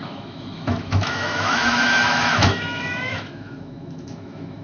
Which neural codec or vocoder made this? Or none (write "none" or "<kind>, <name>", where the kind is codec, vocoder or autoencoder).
autoencoder, DAC-VAE